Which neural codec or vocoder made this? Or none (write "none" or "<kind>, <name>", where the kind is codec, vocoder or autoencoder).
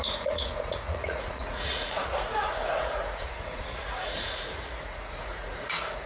vocoder, Vocos